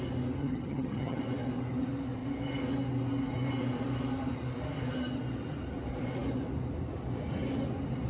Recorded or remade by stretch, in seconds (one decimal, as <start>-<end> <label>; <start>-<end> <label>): 0.0-0.4 recorded; 0.4-1.2 remade; 1.2-8.1 recorded